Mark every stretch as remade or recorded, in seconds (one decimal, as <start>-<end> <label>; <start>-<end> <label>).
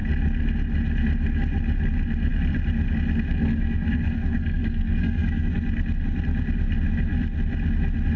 0.0-3.3 recorded; 3.3-5.5 remade; 5.5-8.2 recorded